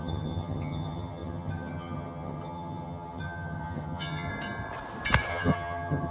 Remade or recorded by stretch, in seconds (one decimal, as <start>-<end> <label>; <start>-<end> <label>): 0.0-4.3 remade; 4.3-5.3 recorded; 5.3-6.1 remade